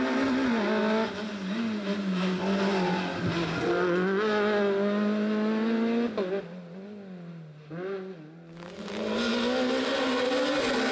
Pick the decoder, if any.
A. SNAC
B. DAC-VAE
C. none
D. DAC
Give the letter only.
C